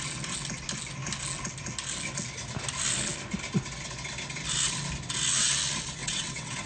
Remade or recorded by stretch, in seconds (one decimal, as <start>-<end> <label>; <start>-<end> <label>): 0.0-6.0 recorded; 6.0-6.7 remade